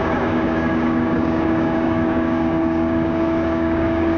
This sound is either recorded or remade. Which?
remade